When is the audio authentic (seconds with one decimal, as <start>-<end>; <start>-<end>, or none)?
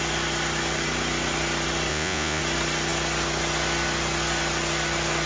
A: 0.0-1.9; 2.4-5.3